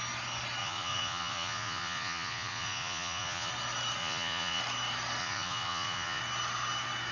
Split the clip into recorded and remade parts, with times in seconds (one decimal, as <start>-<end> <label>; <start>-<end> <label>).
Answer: 0.0-0.6 recorded; 0.6-3.5 remade; 3.5-4.0 recorded; 4.0-4.6 remade; 4.6-5.2 recorded; 5.2-6.2 remade; 6.2-7.1 recorded